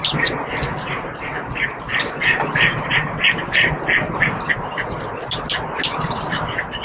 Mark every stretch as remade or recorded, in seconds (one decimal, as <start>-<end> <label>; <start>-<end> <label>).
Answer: 0.0-6.8 recorded